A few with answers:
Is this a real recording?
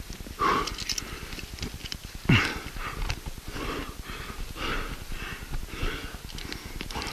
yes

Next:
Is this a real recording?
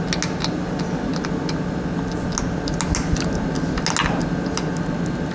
yes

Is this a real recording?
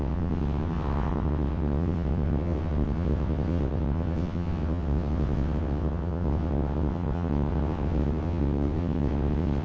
no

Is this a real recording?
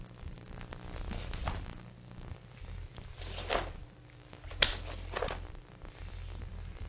yes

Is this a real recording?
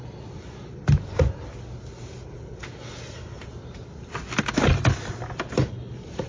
yes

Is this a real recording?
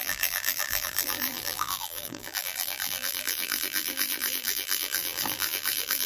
no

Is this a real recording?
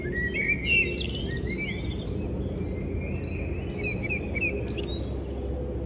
yes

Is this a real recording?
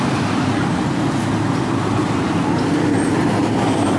yes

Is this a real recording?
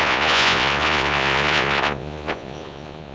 no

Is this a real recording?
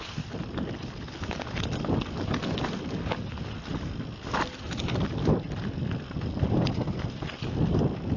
yes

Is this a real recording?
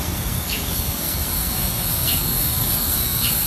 no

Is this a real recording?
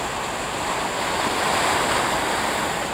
yes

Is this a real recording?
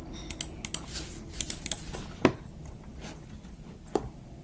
yes